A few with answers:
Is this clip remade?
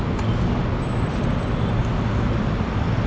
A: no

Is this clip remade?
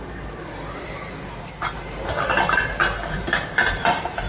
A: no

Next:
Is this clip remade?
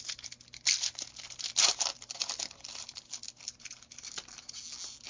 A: no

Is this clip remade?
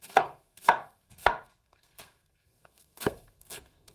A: yes